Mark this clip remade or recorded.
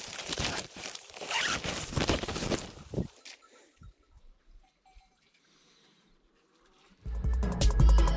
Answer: remade